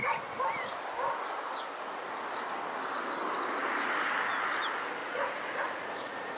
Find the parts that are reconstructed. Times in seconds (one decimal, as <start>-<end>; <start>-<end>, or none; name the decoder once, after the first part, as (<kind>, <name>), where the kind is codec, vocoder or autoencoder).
5.0-6.4 (vocoder, Vocos)